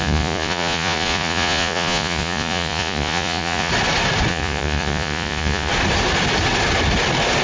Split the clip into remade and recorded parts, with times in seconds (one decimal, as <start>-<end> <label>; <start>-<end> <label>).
0.0-3.7 remade; 3.7-4.3 recorded; 4.3-5.7 remade; 5.7-7.4 recorded